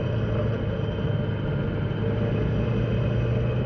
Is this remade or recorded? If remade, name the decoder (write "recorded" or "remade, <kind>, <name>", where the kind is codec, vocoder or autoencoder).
recorded